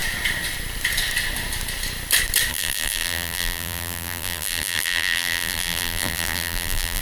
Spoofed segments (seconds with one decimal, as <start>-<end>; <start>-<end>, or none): 2.5-7.0